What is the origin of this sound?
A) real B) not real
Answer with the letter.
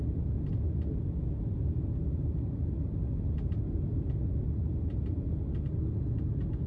A